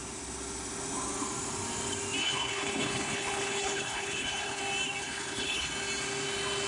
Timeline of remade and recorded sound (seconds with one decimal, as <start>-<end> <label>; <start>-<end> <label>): 0.0-2.2 recorded; 2.2-4.6 remade; 4.6-5.0 recorded; 5.0-5.7 remade; 5.7-6.7 recorded